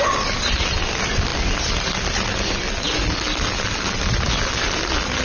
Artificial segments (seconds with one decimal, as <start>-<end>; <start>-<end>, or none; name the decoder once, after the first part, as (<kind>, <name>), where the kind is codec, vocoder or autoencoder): none